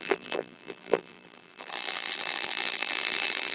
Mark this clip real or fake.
fake